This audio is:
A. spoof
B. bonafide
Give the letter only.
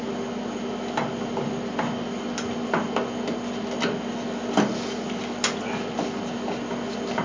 B